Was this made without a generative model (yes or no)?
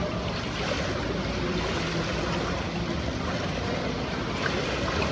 yes